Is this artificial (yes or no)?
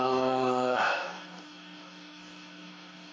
yes